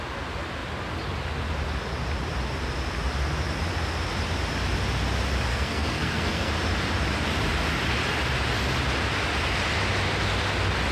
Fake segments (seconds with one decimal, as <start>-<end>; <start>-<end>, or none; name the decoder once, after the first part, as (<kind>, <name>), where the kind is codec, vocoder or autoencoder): 5.5-6.5 (codec, SNAC)